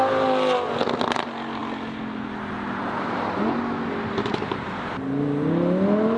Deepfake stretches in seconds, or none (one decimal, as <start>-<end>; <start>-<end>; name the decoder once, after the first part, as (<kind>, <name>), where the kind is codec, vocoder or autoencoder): none